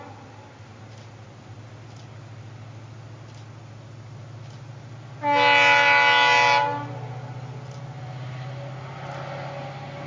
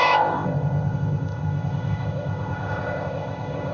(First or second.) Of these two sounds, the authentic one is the first